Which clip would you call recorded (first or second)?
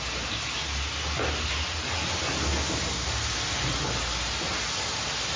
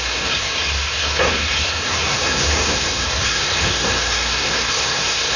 first